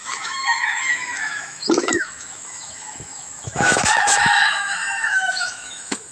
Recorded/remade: remade